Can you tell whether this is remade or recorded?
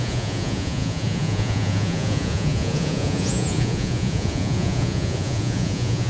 remade